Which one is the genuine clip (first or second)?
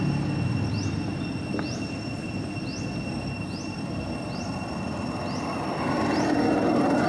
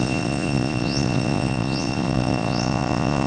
first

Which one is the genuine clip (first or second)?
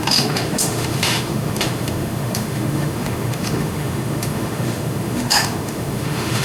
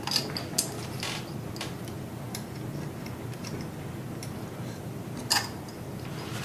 second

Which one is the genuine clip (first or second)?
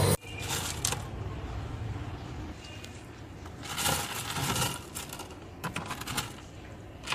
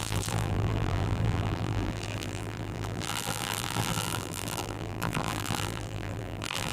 first